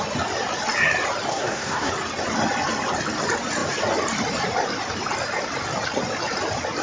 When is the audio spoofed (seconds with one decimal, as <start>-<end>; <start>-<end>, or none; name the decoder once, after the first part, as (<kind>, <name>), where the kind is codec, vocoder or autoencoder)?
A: 1.3-1.9 (codec, SNAC)